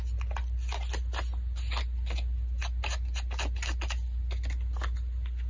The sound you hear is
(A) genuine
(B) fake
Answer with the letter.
A